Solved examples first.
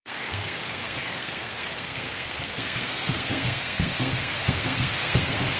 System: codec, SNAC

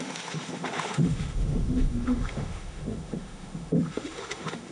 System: autoencoder, DAC-VAE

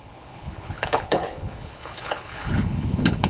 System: codec, HILCodec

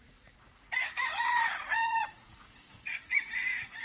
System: vocoder, Vocos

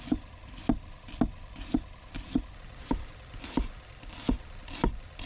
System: none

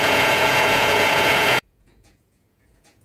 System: vocoder, Vocos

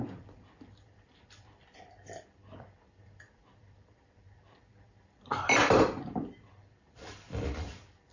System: vocoder, BigVGAN v2